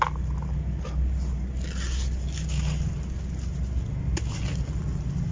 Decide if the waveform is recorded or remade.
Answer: recorded